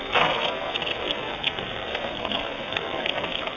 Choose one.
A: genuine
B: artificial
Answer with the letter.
B